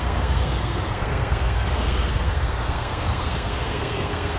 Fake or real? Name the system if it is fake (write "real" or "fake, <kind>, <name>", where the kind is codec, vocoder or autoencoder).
fake, codec, SNAC